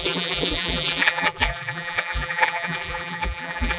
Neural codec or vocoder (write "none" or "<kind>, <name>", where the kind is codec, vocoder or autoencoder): vocoder, BigVGAN v2